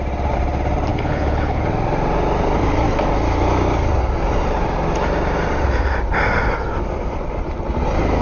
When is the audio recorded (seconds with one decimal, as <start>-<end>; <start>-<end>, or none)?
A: 0.0-0.9; 1.6-8.2